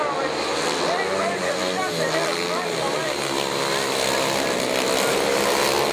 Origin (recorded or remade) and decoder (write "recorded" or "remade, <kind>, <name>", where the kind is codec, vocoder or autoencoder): recorded